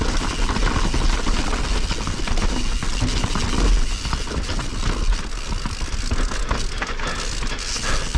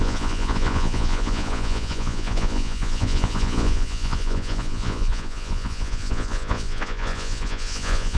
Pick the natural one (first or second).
first